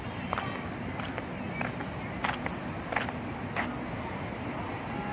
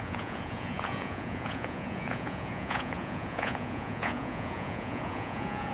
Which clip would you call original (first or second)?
first